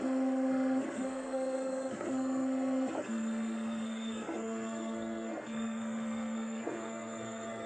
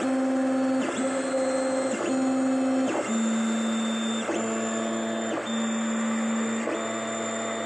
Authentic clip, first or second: second